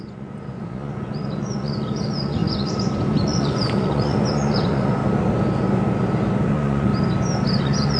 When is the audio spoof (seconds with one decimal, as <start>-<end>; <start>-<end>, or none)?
0.0-5.0; 6.5-6.9; 7.6-8.0